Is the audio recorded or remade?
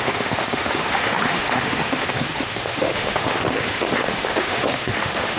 remade